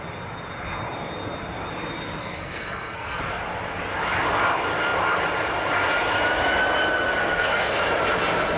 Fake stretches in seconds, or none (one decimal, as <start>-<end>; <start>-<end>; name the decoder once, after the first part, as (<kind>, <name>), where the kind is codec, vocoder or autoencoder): 2.2-3.2 (codec, SNAC); 7.2-7.8